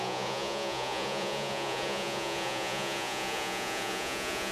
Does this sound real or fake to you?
fake